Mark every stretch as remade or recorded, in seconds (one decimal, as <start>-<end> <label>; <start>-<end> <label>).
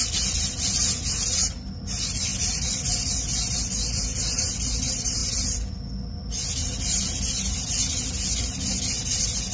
0.0-9.5 recorded